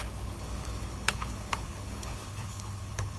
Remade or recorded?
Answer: remade